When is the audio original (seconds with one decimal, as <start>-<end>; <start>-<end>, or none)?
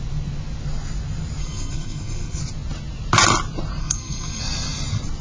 0.0-1.4; 2.4-3.8; 4.4-5.2